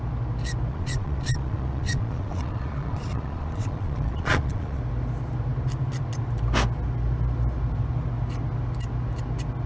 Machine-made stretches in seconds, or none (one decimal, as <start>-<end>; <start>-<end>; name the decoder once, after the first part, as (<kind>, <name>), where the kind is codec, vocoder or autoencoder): 0.7-4.8 (vocoder, Vocos)

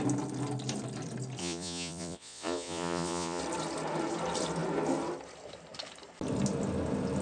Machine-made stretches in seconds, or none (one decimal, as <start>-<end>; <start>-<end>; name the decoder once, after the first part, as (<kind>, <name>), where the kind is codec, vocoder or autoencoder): 1.4-3.4 (vocoder, Vocos)

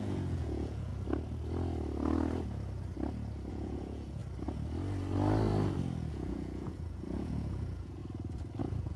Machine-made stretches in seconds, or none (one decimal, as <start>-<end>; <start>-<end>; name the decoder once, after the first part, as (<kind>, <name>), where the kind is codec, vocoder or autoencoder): 0.0-0.9 (vocoder, Vocos); 3.5-4.2; 6.1-8.0; 8.6-9.0

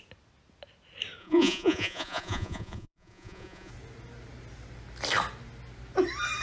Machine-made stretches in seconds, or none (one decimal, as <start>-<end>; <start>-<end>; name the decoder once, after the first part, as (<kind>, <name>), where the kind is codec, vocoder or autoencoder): 1.2-3.7 (vocoder, Vocos)

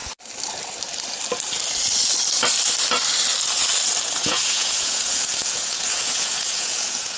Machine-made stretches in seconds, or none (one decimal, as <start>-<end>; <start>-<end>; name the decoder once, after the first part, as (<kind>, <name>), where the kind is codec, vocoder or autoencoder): 4.0-7.2 (vocoder, Vocos)